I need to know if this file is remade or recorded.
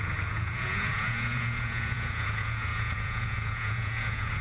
remade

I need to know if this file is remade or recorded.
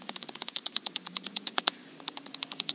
remade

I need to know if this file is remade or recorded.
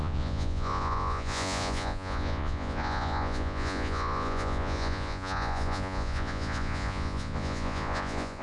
remade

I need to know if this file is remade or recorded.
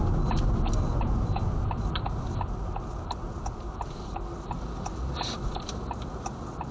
recorded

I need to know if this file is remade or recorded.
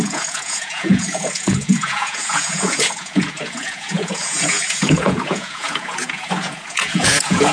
remade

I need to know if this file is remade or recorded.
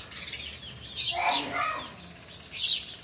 recorded